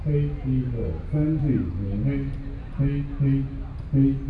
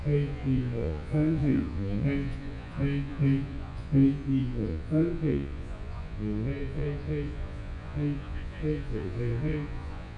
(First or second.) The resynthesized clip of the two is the second